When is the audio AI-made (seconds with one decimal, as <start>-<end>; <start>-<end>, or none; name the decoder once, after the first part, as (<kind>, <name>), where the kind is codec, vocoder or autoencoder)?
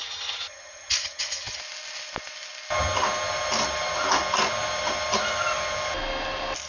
0.0-1.6 (vocoder, HiFi-GAN)